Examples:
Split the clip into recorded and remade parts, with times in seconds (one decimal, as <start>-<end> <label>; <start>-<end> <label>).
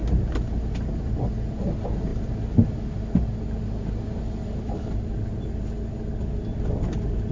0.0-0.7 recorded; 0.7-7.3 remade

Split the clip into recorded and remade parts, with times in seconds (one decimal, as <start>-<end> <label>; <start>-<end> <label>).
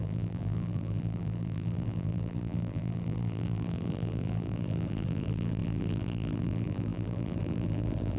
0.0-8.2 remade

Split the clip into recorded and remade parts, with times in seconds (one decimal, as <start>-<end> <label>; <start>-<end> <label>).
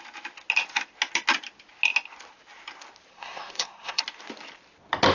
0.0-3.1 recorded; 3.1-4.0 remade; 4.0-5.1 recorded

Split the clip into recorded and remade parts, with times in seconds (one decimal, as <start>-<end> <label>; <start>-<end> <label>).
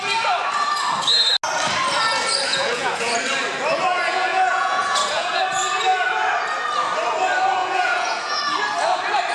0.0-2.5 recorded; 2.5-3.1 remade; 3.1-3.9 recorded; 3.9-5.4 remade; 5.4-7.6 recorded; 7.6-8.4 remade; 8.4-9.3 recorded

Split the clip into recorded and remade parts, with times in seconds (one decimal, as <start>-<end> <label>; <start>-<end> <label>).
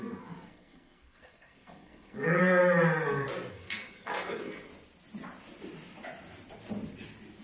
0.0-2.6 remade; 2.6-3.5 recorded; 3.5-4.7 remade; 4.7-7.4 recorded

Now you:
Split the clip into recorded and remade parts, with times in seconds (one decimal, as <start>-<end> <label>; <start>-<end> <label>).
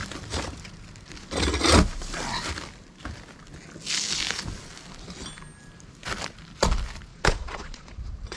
0.0-7.1 recorded; 7.1-8.0 remade; 8.0-8.4 recorded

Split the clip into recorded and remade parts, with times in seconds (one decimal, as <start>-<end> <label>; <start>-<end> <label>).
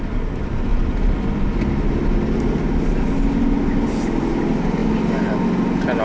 0.0-6.0 recorded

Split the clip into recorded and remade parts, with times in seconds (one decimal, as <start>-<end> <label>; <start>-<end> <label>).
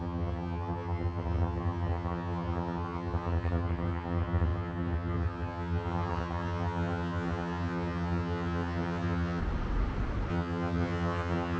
0.0-9.4 remade; 9.4-10.3 recorded; 10.3-11.6 remade